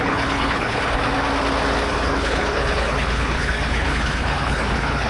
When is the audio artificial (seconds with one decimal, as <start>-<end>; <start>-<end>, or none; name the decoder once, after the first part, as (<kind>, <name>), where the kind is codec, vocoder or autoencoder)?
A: 0.0-0.8 (codec, HILCodec); 1.9-5.1